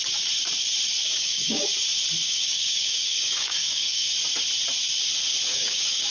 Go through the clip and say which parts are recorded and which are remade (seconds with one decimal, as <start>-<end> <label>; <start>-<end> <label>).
0.0-1.0 recorded; 1.0-1.7 remade; 1.7-2.2 recorded; 2.2-4.1 remade; 4.1-5.5 recorded; 5.5-6.1 remade